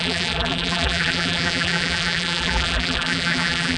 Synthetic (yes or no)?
yes